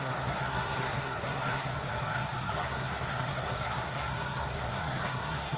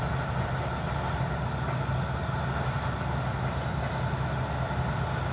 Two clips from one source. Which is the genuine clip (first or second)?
second